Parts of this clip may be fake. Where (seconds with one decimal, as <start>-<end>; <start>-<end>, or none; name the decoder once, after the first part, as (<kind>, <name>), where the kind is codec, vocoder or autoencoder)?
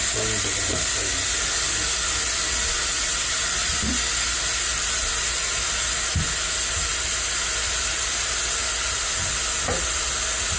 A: none